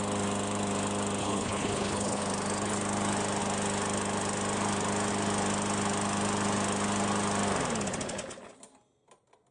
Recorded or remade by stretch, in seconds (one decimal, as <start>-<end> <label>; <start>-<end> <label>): 0.0-1.2 recorded; 1.2-2.2 remade; 2.2-9.5 recorded